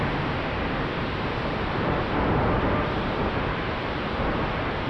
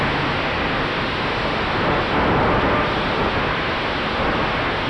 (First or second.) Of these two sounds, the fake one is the first